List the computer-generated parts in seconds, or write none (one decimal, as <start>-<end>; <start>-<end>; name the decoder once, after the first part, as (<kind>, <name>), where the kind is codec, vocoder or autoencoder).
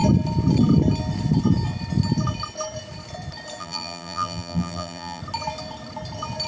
3.6-5.2 (vocoder, BigVGAN v2)